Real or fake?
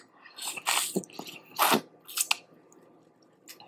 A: real